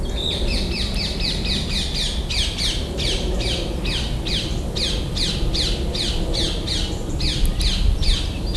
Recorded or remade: recorded